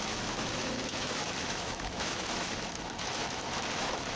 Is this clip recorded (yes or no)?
no